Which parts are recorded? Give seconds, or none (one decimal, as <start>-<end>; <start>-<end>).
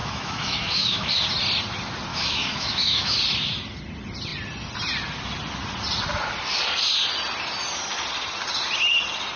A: 1.1-2.1; 3.2-9.4